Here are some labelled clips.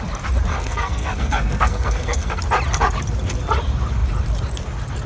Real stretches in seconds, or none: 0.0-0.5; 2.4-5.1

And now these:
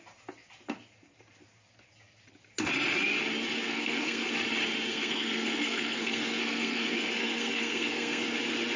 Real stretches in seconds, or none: 0.0-3.6; 4.3-4.9; 8.2-8.8

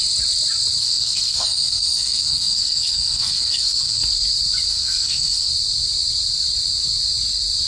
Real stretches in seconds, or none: 0.0-0.8; 4.0-4.7; 5.5-7.7

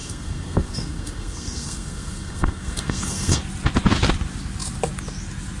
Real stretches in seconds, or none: 3.4-5.6

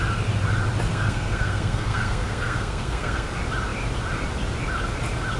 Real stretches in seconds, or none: 0.0-0.9; 3.3-5.4

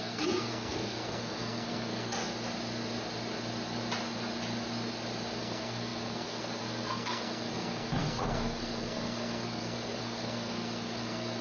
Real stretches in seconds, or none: 2.2-5.4

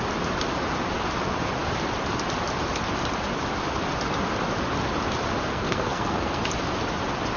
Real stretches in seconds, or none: 0.0-5.5; 6.4-7.4

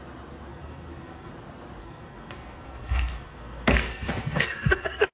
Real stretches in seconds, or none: 0.0-0.5; 1.3-1.8